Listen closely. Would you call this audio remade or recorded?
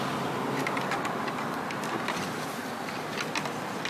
recorded